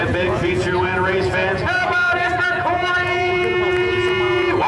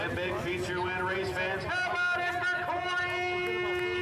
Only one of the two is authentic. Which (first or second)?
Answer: second